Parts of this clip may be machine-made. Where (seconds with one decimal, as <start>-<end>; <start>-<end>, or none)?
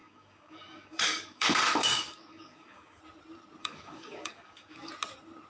0.0-3.0; 3.6-4.9